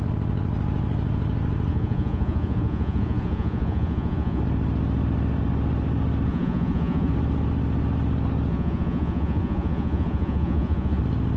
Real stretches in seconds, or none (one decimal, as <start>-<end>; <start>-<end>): 0.0-1.7; 4.4-6.3; 7.1-8.5; 11.0-11.4